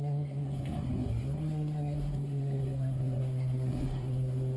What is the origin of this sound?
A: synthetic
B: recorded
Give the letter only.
A